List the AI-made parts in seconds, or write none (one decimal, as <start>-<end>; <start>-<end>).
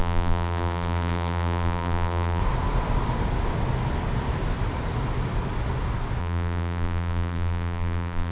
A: 0.0-2.4; 6.2-8.3